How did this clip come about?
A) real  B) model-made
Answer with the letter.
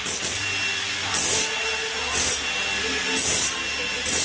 A